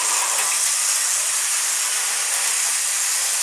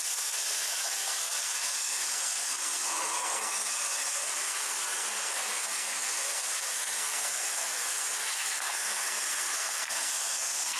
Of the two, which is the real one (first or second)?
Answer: first